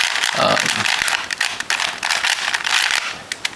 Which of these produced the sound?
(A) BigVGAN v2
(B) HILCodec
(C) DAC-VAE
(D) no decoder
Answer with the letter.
D